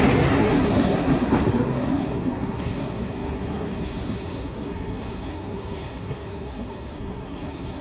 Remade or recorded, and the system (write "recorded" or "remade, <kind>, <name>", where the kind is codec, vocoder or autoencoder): remade, codec, SNAC